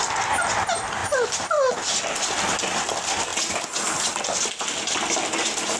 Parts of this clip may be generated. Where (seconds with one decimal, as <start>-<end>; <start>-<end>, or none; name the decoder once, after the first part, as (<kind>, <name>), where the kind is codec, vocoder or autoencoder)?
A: none